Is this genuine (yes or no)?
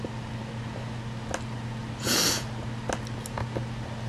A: yes